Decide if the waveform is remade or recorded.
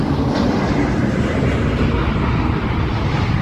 remade